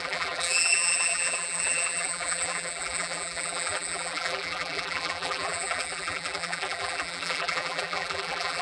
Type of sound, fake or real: fake